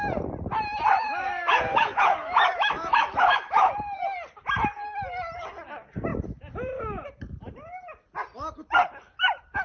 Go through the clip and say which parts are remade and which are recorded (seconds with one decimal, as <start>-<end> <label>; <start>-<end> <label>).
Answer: 0.0-1.1 recorded; 1.1-3.7 remade; 3.7-9.6 recorded